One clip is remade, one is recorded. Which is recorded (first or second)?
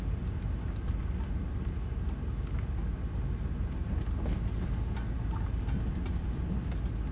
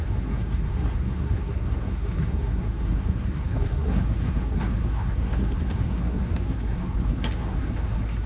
first